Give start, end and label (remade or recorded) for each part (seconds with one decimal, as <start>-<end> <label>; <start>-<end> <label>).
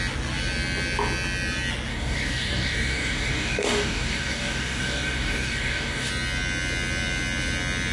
0.0-1.9 recorded; 1.9-6.1 remade; 6.1-7.9 recorded